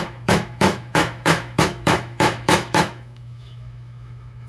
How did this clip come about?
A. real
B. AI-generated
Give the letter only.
B